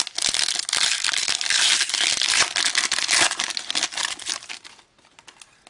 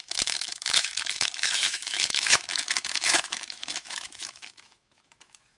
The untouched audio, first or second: first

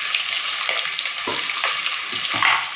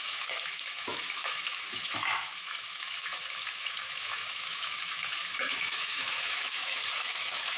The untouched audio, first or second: first